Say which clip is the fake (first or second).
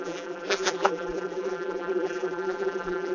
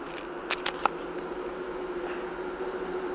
first